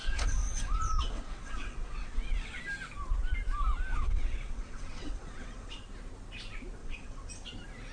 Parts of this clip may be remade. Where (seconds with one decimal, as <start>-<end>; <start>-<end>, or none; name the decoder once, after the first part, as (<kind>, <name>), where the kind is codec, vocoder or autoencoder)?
0.0-2.6 (vocoder, WaveNeXt); 3.9-5.8; 6.8-7.3